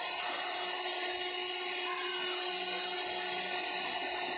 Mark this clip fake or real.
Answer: real